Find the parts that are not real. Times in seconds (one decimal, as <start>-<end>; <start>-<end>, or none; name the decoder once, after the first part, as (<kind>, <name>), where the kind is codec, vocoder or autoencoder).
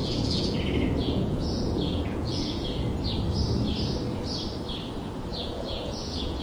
0.0-0.6 (vocoder, Vocos); 1.0-2.7; 5.3-6.4